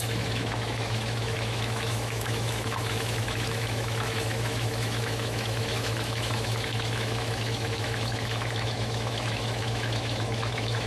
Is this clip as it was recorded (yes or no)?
no